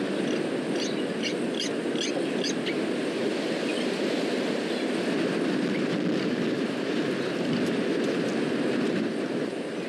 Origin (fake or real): real